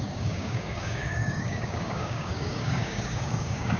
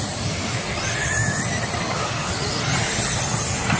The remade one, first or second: first